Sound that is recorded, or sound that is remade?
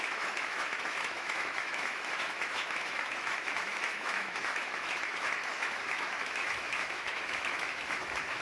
remade